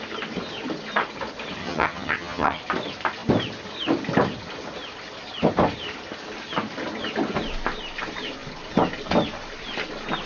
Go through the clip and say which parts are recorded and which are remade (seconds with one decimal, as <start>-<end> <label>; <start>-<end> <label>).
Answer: 0.0-1.6 recorded; 1.6-2.6 remade; 2.6-10.3 recorded